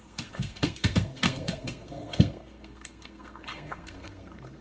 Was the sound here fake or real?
fake